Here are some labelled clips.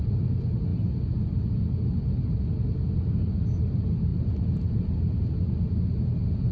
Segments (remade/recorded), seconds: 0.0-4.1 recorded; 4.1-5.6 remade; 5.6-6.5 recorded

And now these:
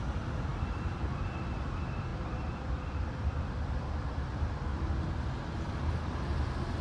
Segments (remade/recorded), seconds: 0.0-2.1 recorded; 2.1-5.9 remade; 5.9-6.8 recorded